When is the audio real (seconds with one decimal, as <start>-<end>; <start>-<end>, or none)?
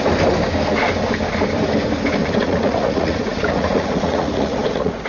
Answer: 0.0-2.2